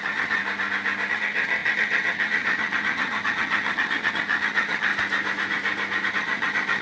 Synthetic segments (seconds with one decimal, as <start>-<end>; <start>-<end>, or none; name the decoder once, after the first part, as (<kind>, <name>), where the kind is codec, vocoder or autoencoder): 0.0-0.4 (vocoder, HiFi-GAN); 1.1-4.9; 6.1-6.8